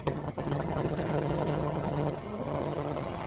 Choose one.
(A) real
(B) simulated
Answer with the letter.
B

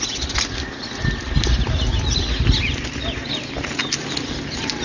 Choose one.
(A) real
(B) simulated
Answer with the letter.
A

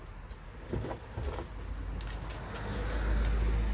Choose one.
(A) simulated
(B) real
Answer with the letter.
B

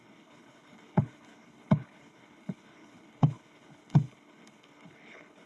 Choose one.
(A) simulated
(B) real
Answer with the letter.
A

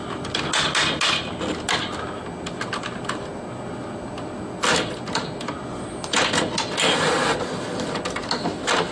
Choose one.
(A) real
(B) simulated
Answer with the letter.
A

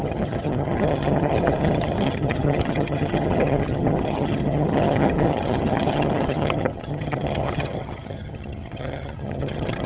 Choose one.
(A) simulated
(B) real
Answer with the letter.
A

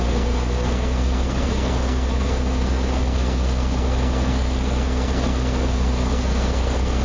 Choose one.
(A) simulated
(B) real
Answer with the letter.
A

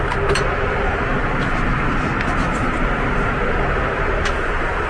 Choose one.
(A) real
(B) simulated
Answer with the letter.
A